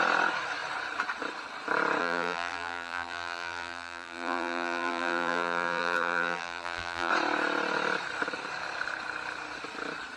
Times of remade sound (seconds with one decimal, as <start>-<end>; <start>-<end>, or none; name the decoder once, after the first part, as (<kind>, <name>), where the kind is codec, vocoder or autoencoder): 2.0-7.1 (vocoder, BigVGAN v2)